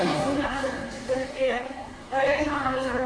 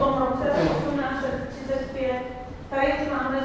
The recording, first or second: second